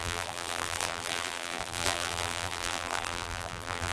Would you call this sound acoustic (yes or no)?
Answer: no